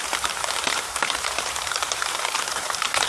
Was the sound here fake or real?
fake